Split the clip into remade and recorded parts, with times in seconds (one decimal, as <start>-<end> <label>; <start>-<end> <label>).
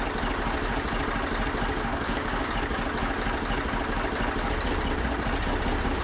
0.0-1.9 recorded; 1.9-2.5 remade; 2.5-6.0 recorded